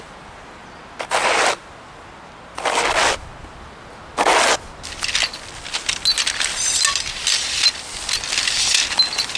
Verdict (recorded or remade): recorded